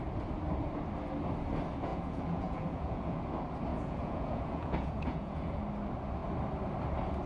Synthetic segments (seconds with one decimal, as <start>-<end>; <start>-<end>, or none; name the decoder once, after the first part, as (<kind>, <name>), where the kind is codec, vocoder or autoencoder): 1.9-3.2 (vocoder, Vocos); 3.7-5.6